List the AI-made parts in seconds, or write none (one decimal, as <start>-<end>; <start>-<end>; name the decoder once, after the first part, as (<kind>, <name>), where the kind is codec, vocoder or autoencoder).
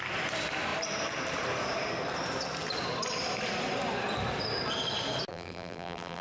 5.3-6.2 (vocoder, BigVGAN v2)